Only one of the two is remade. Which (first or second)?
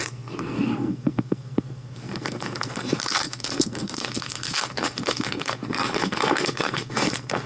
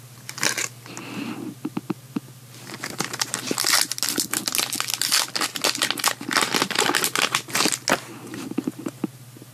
first